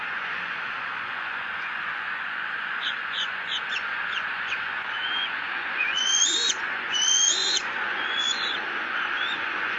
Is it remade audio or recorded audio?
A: remade